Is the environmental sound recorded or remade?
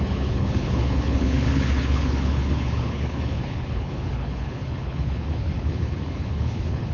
remade